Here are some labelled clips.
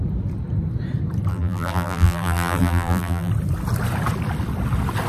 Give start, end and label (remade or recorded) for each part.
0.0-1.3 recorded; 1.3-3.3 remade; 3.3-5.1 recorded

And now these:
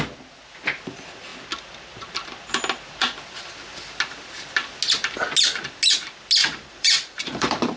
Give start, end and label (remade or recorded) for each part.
0.0-6.4 recorded; 6.4-7.8 remade

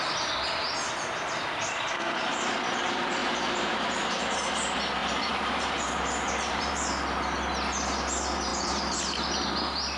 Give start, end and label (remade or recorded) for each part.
0.0-3.2 recorded; 3.2-4.5 remade; 4.5-5.0 recorded; 5.0-6.8 remade; 6.8-8.5 recorded; 8.5-9.0 remade; 9.0-10.0 recorded